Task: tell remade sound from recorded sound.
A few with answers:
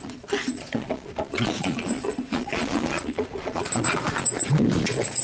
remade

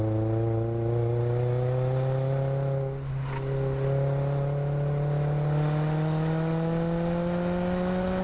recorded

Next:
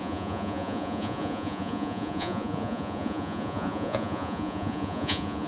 remade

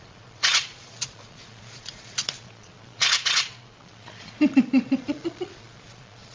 remade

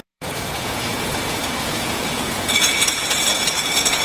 remade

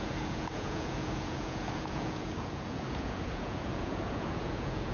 remade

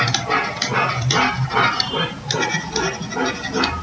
recorded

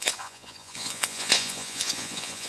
remade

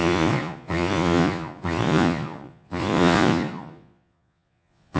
remade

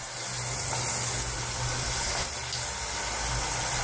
recorded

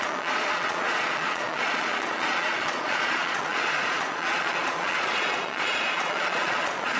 remade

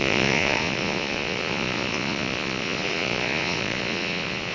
remade